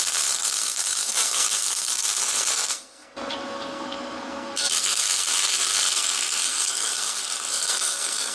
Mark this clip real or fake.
fake